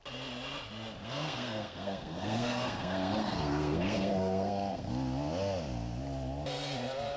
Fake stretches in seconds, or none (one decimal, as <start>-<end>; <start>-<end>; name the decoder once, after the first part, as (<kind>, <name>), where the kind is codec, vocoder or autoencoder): 1.0-4.9 (codec, SNAC)

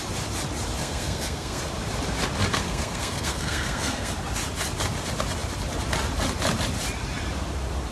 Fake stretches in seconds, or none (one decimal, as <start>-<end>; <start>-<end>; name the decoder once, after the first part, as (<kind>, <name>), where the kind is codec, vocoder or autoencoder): 0.8-1.6 (codec, SNAC); 2.5-4.1

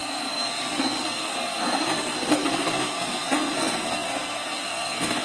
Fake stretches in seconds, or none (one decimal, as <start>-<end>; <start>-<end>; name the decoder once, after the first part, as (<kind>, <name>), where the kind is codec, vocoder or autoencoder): 0.0-5.2 (codec, SNAC)

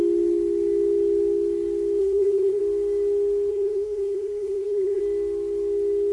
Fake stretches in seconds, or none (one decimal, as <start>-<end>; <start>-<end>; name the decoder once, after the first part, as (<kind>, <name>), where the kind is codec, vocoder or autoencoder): 2.0-2.6 (codec, SNAC); 3.5-5.0

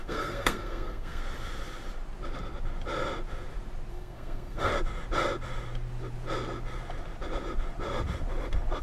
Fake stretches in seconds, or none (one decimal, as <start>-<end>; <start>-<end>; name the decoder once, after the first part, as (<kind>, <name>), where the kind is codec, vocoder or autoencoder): 0.0-1.2 (codec, SNAC); 3.9-4.7

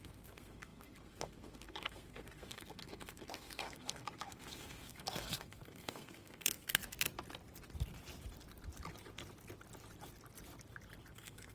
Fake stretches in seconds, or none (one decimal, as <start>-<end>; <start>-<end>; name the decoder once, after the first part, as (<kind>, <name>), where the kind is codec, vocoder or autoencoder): 0.0-6.8 (codec, SNAC); 11.1-11.5